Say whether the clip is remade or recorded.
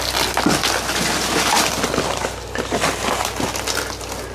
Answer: recorded